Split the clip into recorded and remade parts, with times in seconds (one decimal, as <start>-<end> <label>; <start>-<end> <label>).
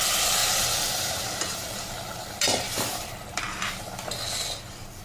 0.0-0.4 recorded; 0.4-3.4 remade; 3.4-5.0 recorded